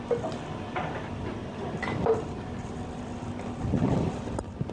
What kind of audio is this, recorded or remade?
remade